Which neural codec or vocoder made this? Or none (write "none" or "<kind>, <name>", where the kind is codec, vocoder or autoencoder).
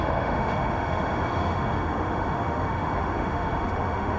autoencoder, DAC-VAE